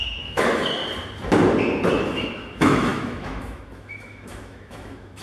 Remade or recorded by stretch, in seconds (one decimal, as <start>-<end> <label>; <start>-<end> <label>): 0.0-0.8 remade; 0.8-1.9 recorded; 1.9-5.2 remade